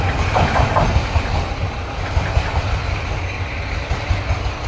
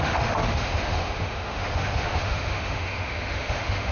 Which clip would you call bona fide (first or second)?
first